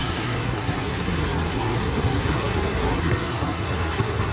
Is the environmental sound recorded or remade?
remade